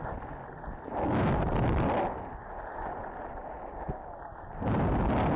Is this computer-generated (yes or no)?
no